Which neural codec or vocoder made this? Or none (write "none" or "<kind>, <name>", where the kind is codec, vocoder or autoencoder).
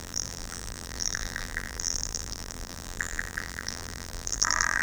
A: vocoder, BigVGAN v2